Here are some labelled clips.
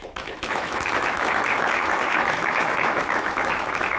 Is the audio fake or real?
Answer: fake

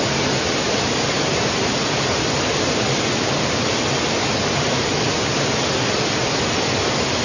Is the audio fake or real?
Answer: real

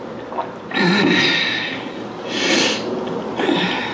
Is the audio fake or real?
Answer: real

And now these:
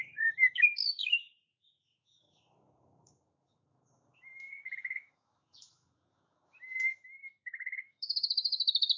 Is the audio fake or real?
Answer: fake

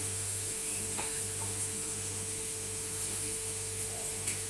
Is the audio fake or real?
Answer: fake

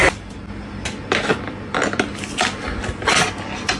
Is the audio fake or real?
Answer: real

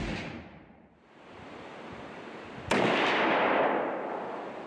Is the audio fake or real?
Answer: real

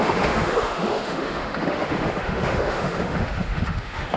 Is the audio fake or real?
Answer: fake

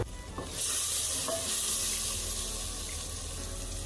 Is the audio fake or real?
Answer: real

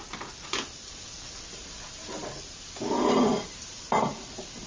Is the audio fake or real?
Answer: real